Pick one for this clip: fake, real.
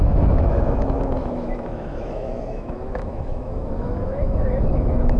fake